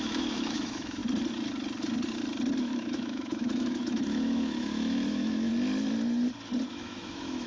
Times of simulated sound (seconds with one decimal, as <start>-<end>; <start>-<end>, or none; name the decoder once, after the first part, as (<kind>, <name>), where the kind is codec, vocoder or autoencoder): 0.0-1.0 (autoencoder, DAC-VAE); 2.6-5.5; 6.7-7.5

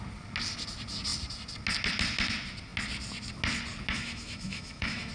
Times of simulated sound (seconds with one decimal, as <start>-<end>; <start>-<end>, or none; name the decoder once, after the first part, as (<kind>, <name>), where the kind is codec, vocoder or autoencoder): 3.9-5.1 (autoencoder, DAC-VAE)

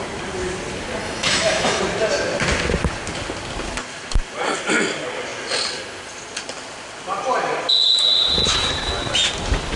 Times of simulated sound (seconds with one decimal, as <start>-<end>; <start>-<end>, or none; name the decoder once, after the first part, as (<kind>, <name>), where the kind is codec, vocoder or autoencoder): 1.0-1.8 (autoencoder, DAC-VAE)

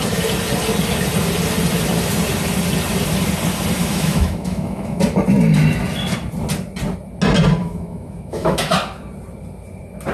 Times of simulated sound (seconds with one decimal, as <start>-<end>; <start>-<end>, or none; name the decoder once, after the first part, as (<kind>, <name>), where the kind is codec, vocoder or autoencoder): 3.8-5.0 (autoencoder, DAC-VAE); 7.6-8.7

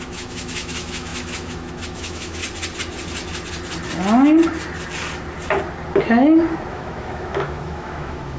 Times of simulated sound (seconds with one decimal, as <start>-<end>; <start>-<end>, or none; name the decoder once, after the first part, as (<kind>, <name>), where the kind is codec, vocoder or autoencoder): 0.0-2.4 (autoencoder, DAC-VAE); 6.7-8.4

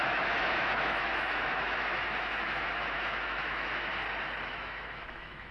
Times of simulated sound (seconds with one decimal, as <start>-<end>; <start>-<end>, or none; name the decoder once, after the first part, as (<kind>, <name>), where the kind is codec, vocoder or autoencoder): 0.0-3.9 (autoencoder, DAC-VAE); 4.5-5.5

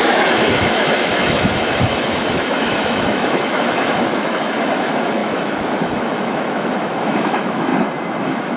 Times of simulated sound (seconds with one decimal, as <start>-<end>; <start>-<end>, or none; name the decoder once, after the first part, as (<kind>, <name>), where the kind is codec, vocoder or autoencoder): 0.0-7.7 (autoencoder, DAC-VAE); 8.2-8.6

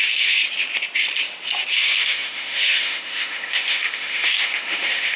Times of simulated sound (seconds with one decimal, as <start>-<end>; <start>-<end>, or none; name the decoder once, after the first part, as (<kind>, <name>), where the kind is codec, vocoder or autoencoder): 0.0-0.4 (autoencoder, DAC-VAE); 1.7-5.2